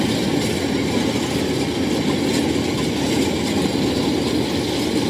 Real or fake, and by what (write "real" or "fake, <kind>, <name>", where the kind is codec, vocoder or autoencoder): real